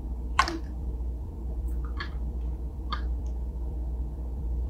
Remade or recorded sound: remade